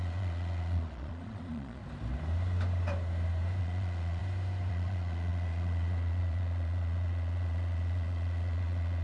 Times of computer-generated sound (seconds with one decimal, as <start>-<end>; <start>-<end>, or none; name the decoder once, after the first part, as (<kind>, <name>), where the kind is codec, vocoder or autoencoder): 0.0-1.8 (vocoder, Vocos); 3.6-4.2; 4.7-9.0